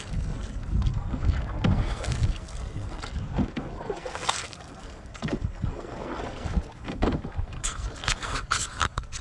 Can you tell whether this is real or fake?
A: fake